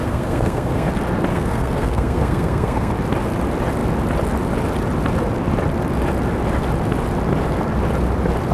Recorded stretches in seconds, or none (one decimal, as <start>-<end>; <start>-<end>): 0.9-1.3; 2.9-8.5

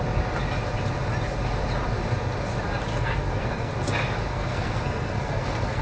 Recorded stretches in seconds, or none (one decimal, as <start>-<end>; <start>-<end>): 0.0-2.9; 3.7-4.3

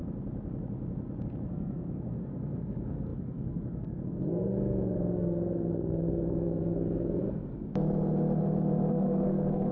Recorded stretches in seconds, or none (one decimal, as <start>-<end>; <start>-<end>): 0.0-1.5; 7.2-8.9

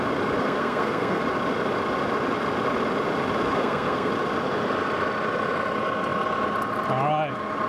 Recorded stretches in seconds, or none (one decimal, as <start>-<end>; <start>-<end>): 0.0-0.4; 1.2-3.6; 4.1-7.7